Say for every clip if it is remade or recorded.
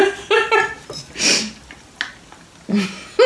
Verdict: recorded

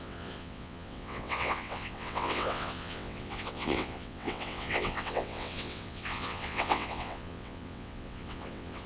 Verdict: remade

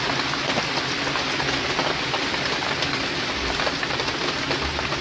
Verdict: recorded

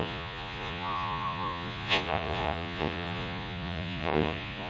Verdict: remade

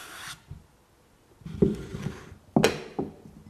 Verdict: recorded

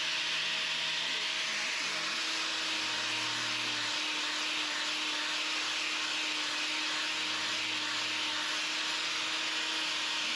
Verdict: recorded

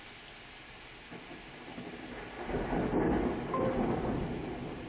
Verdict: recorded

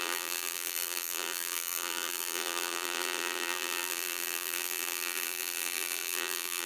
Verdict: remade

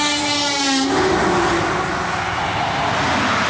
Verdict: recorded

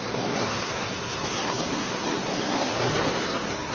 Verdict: remade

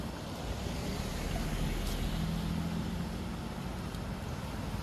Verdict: recorded